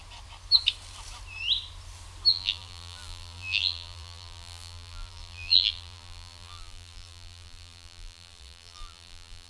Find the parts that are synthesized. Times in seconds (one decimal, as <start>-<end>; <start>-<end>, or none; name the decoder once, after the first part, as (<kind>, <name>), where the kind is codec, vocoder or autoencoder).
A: 2.3-9.5 (vocoder, BigVGAN v2)